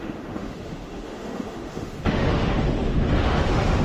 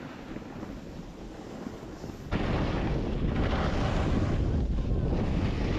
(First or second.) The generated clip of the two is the first